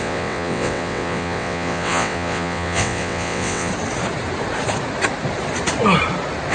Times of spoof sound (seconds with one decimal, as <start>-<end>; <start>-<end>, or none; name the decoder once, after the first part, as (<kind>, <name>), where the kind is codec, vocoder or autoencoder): 0.0-3.7 (vocoder, WaveNeXt)